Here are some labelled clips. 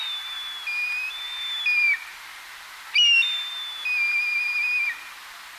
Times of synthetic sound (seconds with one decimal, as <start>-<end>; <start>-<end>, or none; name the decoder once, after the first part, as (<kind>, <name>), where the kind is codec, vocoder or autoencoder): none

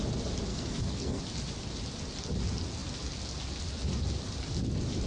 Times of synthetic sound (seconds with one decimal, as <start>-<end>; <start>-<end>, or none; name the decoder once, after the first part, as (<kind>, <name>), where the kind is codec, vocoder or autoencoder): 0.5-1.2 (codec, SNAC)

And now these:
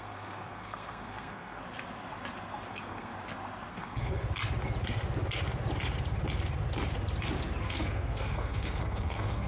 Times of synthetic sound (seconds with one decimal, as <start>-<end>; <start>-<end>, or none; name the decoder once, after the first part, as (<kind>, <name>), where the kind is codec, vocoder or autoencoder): 0.0-1.6 (codec, SNAC); 2.7-3.1; 3.7-4.2; 7.6-9.5